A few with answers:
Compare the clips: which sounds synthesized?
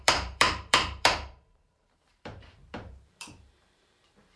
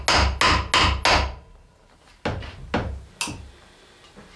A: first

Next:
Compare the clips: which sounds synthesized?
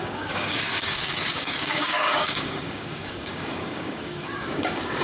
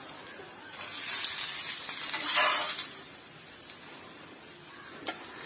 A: first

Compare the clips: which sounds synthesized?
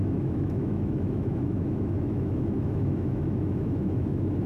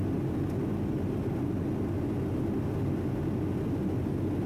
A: first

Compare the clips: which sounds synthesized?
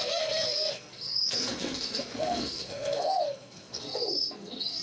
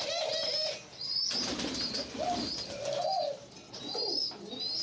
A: first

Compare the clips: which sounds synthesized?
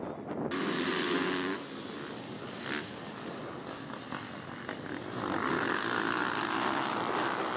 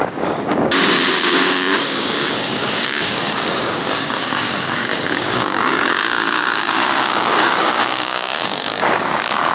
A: second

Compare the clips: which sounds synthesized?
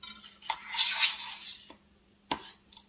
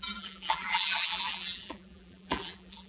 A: second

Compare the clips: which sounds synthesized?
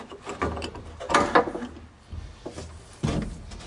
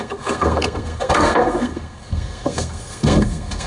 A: second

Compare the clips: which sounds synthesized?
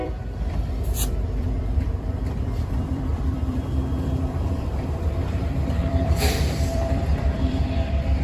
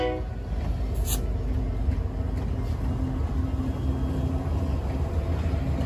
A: first